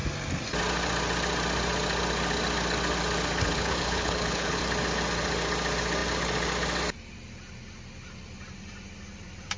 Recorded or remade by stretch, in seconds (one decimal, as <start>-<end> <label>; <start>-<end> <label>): 0.0-3.5 recorded; 3.5-4.6 remade; 4.6-9.6 recorded